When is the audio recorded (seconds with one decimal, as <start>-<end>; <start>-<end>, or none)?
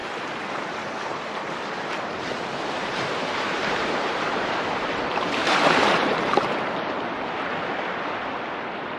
2.3-2.8; 6.8-9.0